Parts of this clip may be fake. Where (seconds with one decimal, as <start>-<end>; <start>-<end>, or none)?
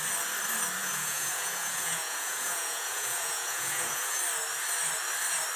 0.8-4.2